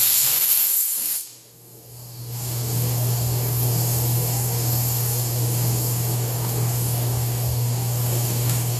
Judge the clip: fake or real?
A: fake